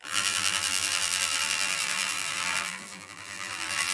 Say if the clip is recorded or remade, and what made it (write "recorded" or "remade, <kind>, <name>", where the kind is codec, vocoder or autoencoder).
remade, vocoder, BigVGAN v2